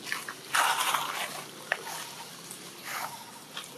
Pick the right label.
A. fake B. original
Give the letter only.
B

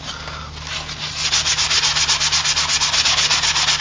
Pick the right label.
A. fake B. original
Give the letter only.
B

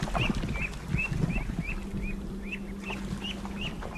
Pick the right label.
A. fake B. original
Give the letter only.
B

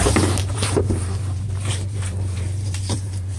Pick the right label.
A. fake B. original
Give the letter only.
A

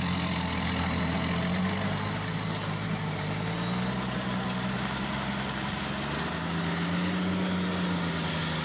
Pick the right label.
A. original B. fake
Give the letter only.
A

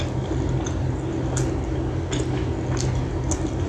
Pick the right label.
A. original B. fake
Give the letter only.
A